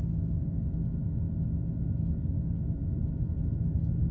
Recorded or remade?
recorded